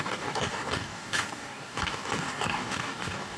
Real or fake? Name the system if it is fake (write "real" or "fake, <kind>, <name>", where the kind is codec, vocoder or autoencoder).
fake, codec, DAC